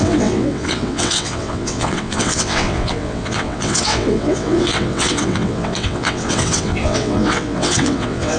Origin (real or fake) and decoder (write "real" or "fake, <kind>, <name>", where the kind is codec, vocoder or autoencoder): fake, vocoder, WaveNeXt